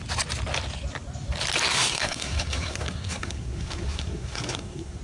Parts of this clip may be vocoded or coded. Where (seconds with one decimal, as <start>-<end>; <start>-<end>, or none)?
1.7-5.0